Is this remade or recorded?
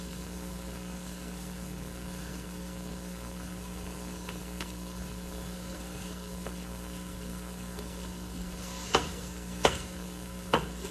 remade